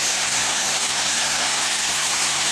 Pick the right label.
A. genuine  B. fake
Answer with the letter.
B